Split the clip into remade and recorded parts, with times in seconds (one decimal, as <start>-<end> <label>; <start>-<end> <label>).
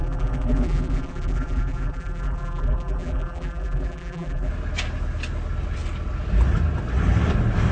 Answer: 0.0-4.5 remade; 4.5-7.7 recorded